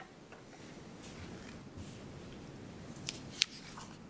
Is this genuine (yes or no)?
yes